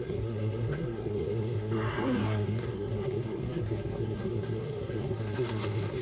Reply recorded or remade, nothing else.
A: remade